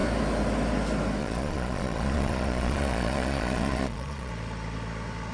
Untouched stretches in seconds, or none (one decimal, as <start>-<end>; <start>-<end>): 0.0-1.2; 4.3-5.3